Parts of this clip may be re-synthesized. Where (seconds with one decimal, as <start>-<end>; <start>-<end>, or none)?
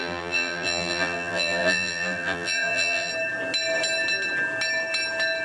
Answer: 0.0-3.1